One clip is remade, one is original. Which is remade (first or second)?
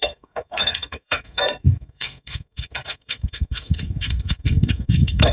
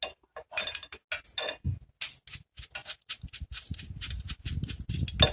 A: first